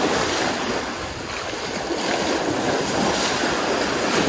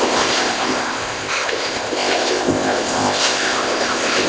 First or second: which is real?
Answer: first